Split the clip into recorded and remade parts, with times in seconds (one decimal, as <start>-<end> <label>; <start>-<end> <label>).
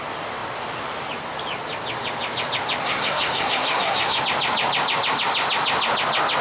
0.0-2.8 recorded; 2.8-4.2 remade; 4.2-6.4 recorded